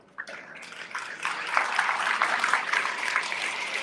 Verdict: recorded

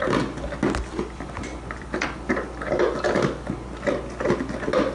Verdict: recorded